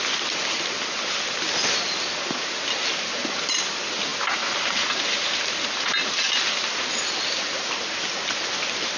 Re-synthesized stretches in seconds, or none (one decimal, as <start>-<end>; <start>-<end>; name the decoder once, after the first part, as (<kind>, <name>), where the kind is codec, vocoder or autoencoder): none